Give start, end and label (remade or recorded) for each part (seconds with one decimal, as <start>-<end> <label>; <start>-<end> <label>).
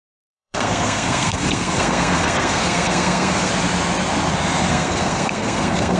0.0-3.5 remade; 3.5-4.7 recorded; 4.7-6.0 remade